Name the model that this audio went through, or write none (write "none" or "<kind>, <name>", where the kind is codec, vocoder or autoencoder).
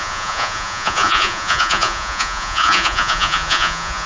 vocoder, Vocos